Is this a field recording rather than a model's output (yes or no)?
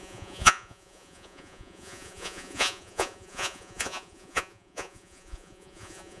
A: no